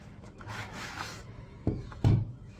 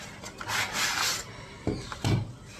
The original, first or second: second